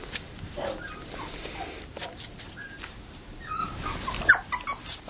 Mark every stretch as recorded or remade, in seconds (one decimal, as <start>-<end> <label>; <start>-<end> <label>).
0.0-5.1 recorded